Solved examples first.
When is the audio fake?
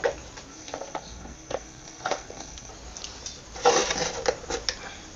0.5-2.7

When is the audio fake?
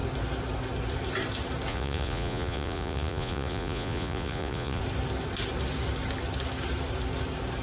1.7-4.8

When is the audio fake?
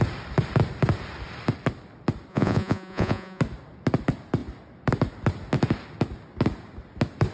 2.3-3.4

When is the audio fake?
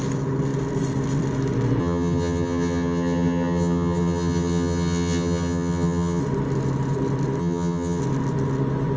1.8-6.2; 7.4-8.0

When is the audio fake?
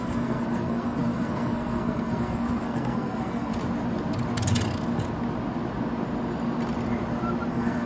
0.0-3.5; 7.5-7.9